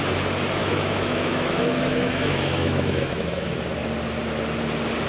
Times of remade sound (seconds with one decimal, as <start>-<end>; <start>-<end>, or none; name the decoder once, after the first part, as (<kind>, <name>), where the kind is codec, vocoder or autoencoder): 0.6-3.5 (autoencoder, DAC-VAE)